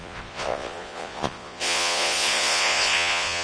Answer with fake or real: fake